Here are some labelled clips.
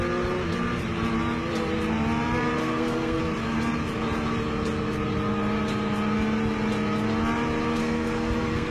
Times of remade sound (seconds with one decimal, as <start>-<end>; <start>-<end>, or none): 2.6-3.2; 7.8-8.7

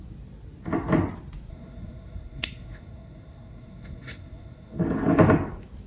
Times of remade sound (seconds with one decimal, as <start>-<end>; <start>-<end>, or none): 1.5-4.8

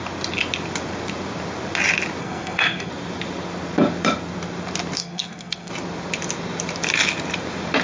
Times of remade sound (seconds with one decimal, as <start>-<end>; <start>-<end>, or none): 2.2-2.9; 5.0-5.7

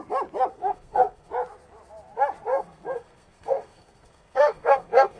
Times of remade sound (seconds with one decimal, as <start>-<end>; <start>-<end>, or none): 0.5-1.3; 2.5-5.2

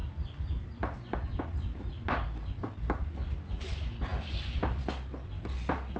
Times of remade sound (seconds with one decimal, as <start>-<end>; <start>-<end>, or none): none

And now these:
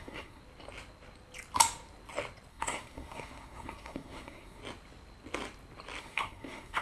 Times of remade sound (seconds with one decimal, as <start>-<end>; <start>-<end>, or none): 0.0-0.4; 2.5-4.6; 6.0-6.8

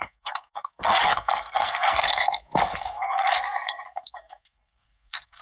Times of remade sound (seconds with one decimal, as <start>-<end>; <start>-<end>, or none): 0.0-5.4

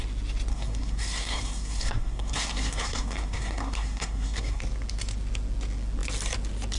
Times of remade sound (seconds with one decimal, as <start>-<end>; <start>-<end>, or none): 0.5-4.6